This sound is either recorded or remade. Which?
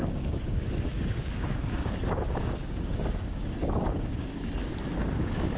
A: remade